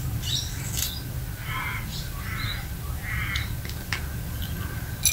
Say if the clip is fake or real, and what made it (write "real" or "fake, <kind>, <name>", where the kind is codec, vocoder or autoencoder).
real